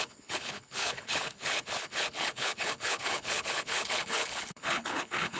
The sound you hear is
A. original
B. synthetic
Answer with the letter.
B